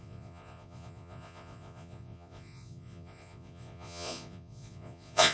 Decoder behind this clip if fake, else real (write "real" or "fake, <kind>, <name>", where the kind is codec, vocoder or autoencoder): fake, vocoder, Vocos